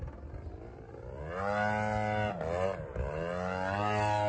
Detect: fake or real real